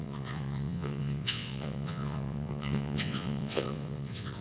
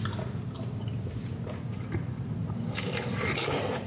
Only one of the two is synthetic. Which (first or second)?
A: first